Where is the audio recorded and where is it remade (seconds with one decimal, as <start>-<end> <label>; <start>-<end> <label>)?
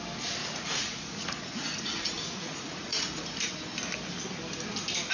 0.0-0.4 recorded; 0.4-3.5 remade; 3.5-5.1 recorded